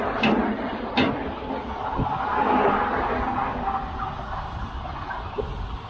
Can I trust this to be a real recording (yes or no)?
yes